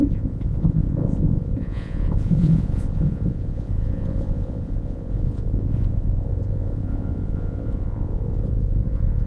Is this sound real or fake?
fake